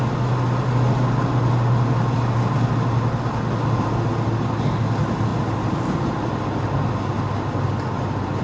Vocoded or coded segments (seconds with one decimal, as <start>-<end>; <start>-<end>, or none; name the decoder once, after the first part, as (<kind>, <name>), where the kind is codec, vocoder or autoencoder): 5.3-6.3 (vocoder, BigVGAN v2)